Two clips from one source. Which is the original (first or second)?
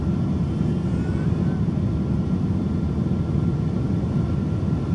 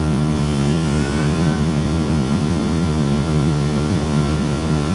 first